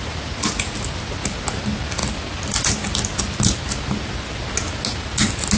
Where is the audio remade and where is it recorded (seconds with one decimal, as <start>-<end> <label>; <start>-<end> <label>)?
0.0-5.6 recorded